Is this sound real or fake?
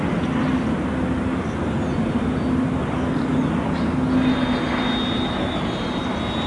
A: real